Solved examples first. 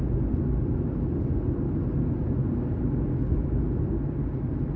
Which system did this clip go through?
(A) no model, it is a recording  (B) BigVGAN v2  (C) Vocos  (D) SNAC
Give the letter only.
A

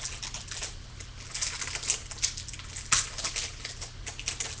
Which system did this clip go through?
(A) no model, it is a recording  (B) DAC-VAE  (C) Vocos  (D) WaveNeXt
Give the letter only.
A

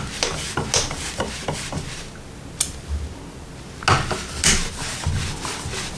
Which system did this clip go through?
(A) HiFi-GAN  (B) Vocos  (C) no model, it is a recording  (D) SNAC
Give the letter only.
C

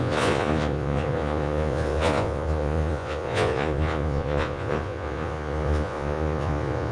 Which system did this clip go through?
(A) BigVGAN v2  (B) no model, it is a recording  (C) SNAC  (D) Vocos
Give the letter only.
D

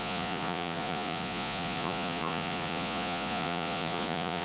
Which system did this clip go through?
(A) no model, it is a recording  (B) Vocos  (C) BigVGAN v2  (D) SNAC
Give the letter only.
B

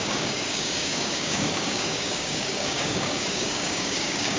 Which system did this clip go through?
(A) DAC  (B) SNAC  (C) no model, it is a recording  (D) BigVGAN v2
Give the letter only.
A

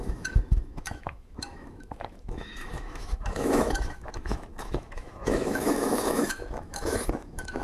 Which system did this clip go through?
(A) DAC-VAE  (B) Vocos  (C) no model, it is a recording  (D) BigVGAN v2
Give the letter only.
A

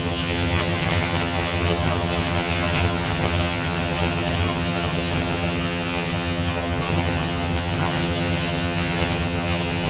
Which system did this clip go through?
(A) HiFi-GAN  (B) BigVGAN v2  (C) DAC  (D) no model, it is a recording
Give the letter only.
A